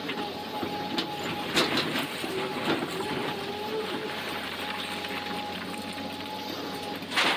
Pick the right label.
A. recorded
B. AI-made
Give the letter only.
A